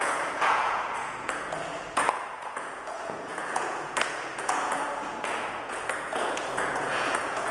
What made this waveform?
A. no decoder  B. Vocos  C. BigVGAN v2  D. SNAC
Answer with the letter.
B